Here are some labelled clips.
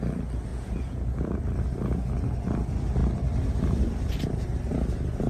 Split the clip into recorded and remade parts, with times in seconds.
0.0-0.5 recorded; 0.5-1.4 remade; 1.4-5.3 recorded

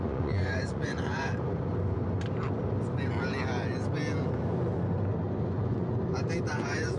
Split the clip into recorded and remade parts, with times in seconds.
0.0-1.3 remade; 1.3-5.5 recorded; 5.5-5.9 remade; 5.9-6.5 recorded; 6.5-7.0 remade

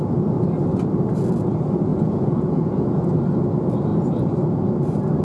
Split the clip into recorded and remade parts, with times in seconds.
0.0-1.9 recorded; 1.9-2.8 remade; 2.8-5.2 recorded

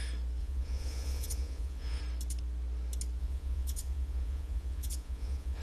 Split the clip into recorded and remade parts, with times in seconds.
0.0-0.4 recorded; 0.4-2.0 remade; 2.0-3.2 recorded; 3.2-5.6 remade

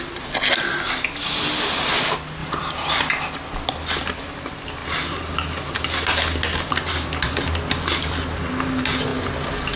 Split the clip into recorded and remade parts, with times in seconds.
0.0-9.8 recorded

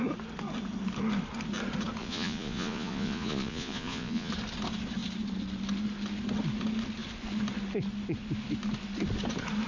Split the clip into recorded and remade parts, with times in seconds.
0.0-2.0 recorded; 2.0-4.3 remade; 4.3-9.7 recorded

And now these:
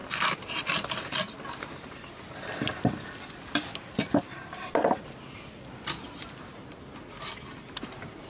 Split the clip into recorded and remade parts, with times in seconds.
0.0-8.3 recorded

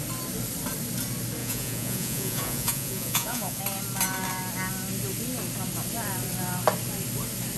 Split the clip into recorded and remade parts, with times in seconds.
0.0-1.4 recorded; 1.4-3.6 remade; 3.6-7.6 recorded